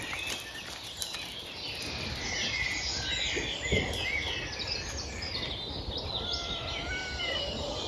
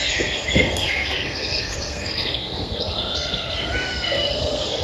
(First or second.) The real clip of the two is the first